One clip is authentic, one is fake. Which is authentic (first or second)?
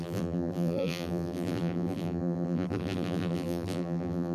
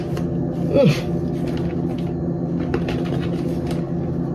second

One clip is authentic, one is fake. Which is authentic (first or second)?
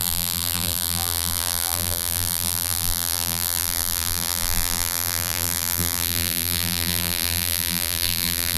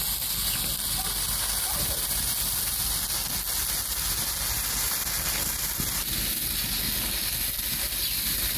second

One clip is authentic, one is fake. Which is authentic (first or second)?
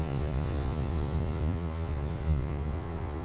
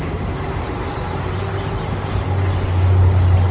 second